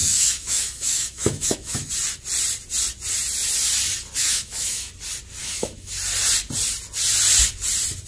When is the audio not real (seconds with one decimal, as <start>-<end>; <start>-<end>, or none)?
0.0-1.9; 4.2-4.9; 5.4-5.9

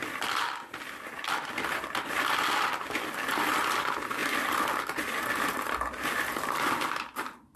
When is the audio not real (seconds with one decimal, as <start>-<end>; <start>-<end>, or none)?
none

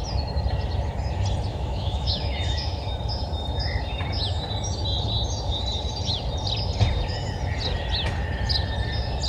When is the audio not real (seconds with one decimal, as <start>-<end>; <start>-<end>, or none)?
1.5-2.7

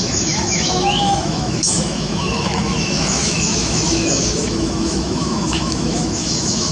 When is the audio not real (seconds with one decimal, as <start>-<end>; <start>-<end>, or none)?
0.0-6.7

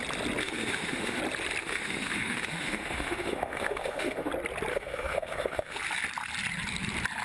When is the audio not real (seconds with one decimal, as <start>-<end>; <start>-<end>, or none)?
0.4-1.2; 1.6-4.3; 4.7-5.8

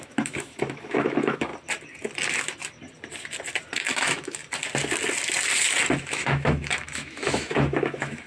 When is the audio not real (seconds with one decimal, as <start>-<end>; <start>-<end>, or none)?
0.0-1.5; 3.8-4.4; 6.0-8.3

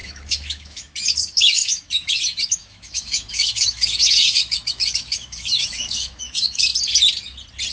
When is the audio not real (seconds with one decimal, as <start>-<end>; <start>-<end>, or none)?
0.0-6.7

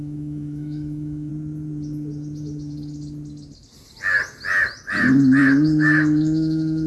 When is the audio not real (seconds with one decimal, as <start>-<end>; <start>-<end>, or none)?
0.0-1.3; 5.4-6.9